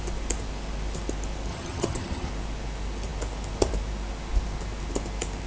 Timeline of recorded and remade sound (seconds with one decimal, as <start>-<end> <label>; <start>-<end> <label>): 0.0-1.5 recorded; 1.5-2.3 remade; 2.3-5.5 recorded